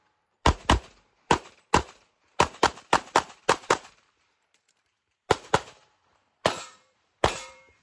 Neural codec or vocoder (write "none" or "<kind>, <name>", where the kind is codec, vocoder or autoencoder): vocoder, BigVGAN v2